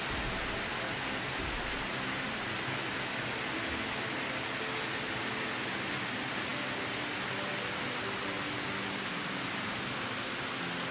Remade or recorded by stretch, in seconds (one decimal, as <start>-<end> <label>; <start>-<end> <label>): 0.0-10.9 recorded